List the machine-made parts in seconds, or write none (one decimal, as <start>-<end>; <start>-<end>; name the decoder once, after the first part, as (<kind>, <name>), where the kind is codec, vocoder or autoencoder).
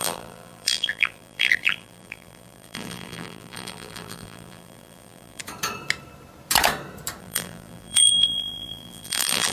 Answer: 0.0-5.4 (vocoder, BigVGAN v2); 7.2-9.5